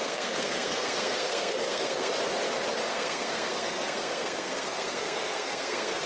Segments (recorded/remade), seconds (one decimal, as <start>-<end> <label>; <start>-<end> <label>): 0.0-2.1 remade; 2.1-2.9 recorded; 2.9-6.1 remade